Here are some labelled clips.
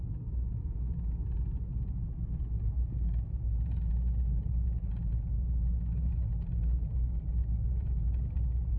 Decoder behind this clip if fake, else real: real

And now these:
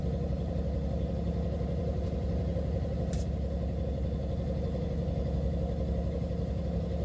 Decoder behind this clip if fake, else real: real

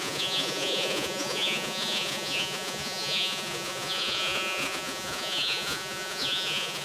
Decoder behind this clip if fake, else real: fake, vocoder, Vocos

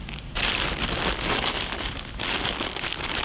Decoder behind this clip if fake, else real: real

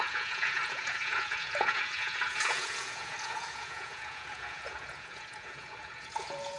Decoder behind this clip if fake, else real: fake, vocoder, Vocos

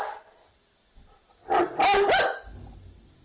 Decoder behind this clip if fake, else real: real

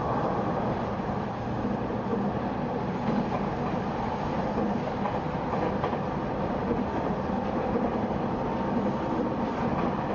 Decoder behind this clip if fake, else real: real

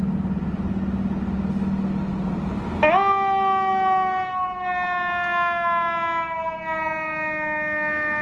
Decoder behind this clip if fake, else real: real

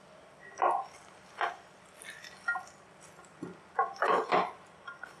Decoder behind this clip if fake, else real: real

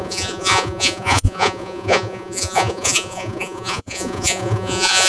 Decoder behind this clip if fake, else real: fake, vocoder, Vocos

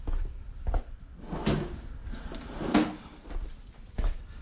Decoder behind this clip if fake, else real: real